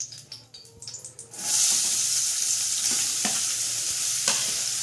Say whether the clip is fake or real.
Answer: fake